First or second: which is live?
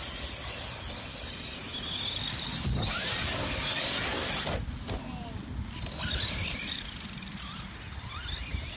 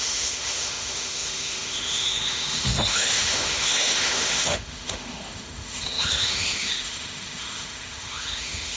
first